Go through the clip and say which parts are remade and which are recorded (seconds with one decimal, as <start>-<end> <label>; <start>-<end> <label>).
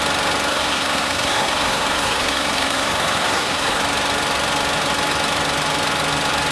0.0-0.5 recorded; 0.5-3.8 remade; 3.8-6.5 recorded